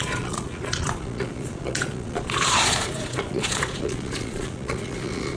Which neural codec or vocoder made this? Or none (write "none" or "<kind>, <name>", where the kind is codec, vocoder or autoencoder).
vocoder, Vocos